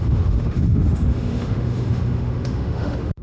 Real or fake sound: fake